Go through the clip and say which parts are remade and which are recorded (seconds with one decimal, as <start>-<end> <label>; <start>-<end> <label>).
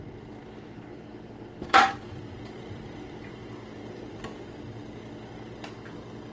0.0-0.4 recorded; 0.4-4.2 remade; 4.2-6.3 recorded